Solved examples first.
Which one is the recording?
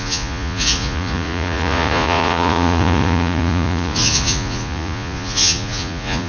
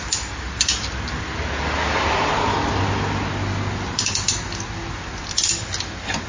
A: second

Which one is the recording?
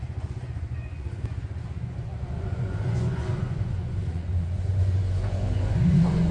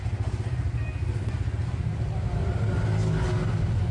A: second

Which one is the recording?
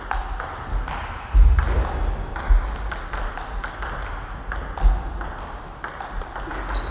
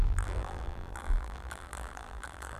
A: first